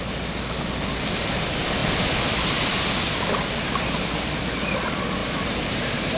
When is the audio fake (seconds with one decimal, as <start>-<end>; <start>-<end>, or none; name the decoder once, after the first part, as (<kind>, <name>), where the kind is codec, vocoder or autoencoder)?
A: 5.2-6.2 (vocoder, BigVGAN v2)

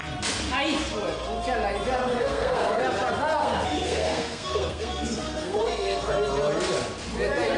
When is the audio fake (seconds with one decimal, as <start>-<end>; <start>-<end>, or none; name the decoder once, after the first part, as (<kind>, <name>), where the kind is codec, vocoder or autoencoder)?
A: 2.1-2.8 (codec, SNAC); 3.4-6.1

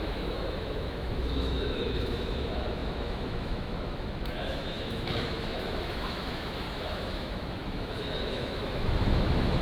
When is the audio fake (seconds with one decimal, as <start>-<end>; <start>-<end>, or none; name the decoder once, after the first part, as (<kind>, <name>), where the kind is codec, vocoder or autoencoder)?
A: 0.0-9.6 (autoencoder, DAC-VAE)